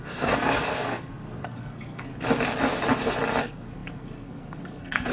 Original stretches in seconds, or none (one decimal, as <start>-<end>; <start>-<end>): 2.1-3.4